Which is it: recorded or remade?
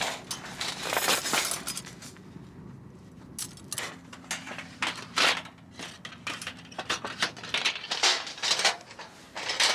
recorded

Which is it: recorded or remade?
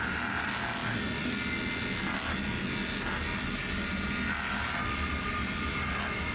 recorded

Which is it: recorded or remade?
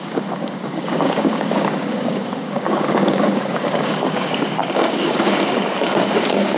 remade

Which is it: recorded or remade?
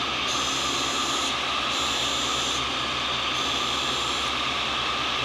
recorded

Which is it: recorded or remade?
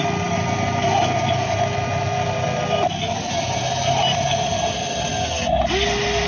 recorded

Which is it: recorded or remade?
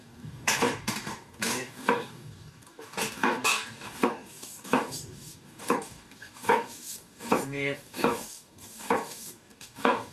remade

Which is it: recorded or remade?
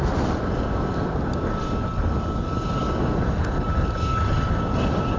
recorded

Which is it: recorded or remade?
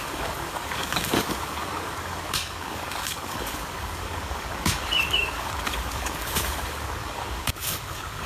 remade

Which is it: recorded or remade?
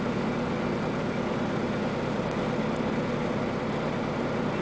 recorded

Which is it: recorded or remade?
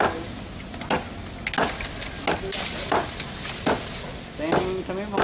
recorded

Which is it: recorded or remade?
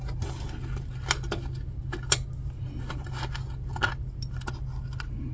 recorded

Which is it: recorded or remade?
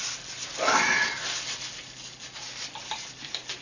recorded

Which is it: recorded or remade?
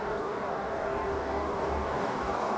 remade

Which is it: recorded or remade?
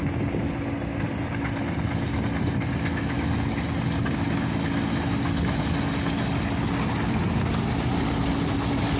recorded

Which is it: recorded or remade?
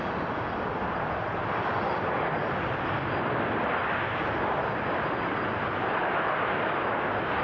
recorded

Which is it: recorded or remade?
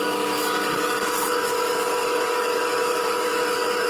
remade